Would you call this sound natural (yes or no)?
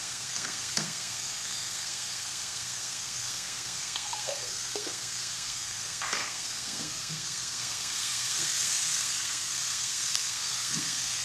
no